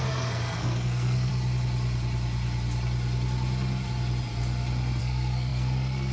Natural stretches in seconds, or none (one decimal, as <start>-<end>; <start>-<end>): 1.3-5.0